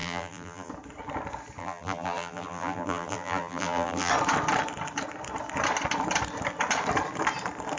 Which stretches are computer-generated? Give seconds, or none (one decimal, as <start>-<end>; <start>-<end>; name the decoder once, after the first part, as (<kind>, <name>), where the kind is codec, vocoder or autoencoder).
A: 0.0-0.7 (vocoder, BigVGAN v2); 1.6-4.1